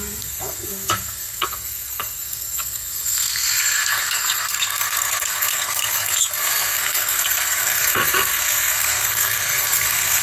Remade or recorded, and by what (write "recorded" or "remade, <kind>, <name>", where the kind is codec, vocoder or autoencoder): remade, codec, SNAC